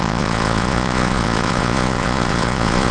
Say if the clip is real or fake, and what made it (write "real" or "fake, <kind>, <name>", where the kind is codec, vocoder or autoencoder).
fake, vocoder, Vocos